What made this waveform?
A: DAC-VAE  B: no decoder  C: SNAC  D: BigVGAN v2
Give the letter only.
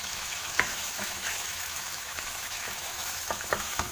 A